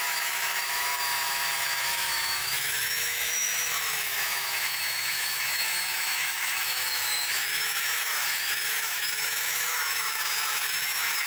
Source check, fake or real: fake